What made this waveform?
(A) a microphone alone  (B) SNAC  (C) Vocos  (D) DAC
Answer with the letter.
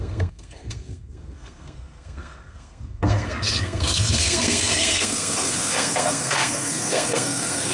B